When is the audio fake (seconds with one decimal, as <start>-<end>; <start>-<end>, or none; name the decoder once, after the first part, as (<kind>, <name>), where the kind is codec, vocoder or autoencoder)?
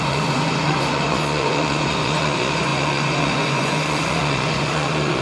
0.0-5.2 (vocoder, Vocos)